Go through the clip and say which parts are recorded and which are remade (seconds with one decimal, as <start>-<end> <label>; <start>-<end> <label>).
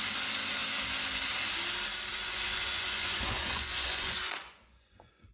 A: 0.0-2.1 recorded; 2.1-5.3 remade